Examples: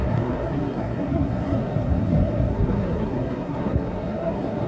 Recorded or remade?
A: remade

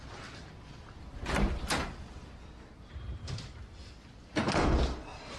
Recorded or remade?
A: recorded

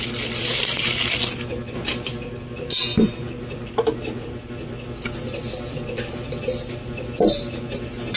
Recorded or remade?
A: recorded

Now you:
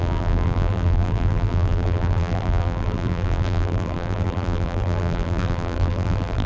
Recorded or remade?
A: remade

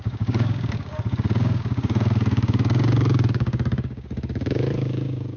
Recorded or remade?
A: remade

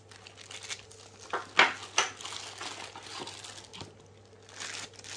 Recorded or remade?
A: recorded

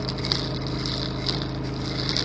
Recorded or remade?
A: recorded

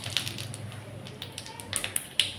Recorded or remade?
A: recorded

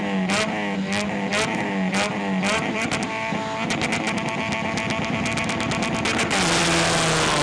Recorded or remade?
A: recorded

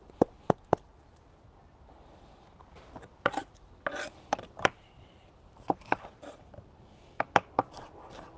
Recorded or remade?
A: recorded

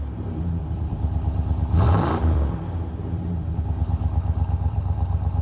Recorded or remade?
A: remade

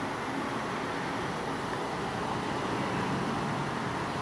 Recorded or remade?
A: recorded